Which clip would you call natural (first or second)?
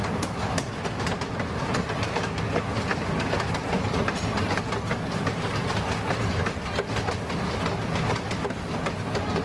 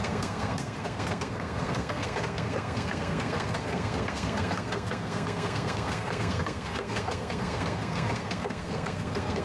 first